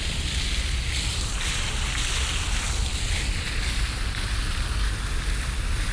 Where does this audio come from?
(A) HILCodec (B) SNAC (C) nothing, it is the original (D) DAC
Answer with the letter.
C